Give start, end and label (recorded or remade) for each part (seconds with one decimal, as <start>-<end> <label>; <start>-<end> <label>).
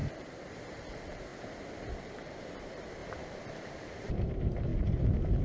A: 0.0-0.5 recorded; 0.5-1.3 remade; 1.3-2.0 recorded; 2.0-4.7 remade; 4.7-5.4 recorded